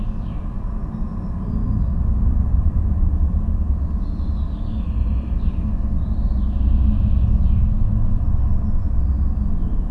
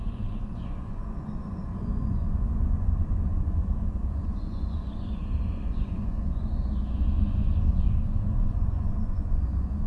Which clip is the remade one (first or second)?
second